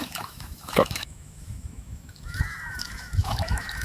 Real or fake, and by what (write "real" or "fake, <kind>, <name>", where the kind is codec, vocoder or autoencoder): fake, autoencoder, DAC-VAE